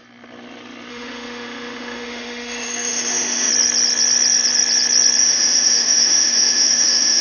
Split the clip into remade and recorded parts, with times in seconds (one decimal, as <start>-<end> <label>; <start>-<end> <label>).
0.0-0.9 recorded; 0.9-3.5 remade; 3.5-5.2 recorded; 5.2-7.2 remade